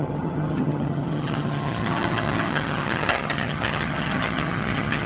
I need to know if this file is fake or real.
fake